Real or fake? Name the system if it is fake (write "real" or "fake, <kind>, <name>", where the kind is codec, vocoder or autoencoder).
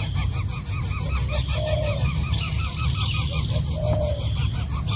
real